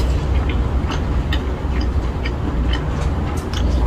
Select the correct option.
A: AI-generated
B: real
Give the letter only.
B